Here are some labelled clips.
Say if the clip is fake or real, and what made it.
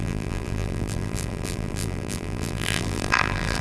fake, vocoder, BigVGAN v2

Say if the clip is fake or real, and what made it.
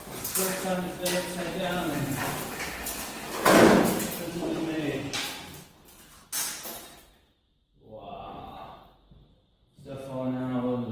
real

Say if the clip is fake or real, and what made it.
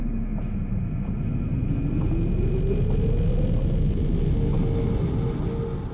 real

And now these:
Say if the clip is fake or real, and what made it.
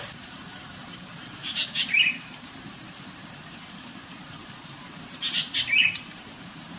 fake, vocoder, BigVGAN v2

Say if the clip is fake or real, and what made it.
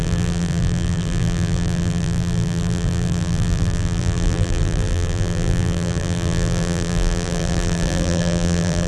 fake, vocoder, BigVGAN v2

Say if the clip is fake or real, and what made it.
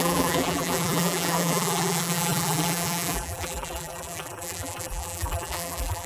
fake, vocoder, BigVGAN v2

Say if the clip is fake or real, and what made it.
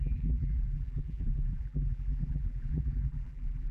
fake, vocoder, BigVGAN v2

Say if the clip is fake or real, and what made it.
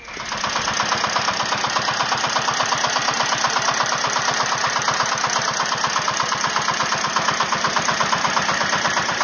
fake, vocoder, BigVGAN v2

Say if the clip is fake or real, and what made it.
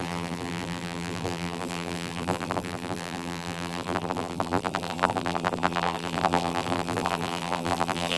fake, vocoder, BigVGAN v2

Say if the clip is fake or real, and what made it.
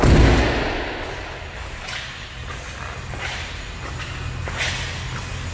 real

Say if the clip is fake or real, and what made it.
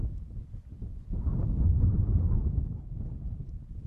real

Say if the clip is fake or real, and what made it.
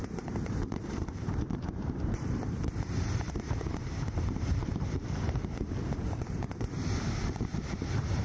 fake, vocoder, BigVGAN v2